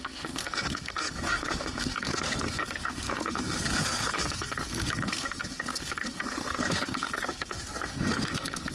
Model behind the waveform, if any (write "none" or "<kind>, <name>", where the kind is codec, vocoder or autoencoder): codec, SNAC